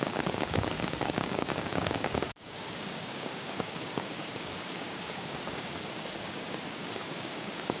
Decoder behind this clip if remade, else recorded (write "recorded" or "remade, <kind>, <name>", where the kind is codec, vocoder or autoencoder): remade, codec, DAC